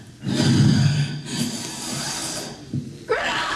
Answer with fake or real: real